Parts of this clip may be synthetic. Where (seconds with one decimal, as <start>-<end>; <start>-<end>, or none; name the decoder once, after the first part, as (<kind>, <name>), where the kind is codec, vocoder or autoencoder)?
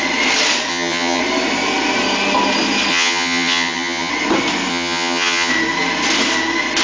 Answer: 0.7-1.2 (vocoder, HiFi-GAN); 2.9-4.1; 4.7-5.5